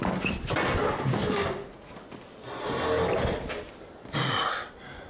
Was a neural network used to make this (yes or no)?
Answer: no